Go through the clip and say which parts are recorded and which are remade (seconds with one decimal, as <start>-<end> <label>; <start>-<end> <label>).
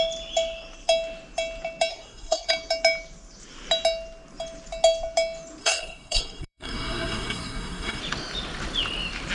0.0-1.9 recorded; 1.9-2.5 remade; 2.5-5.6 recorded; 5.6-8.0 remade; 8.0-9.3 recorded